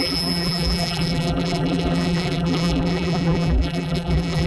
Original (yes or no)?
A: no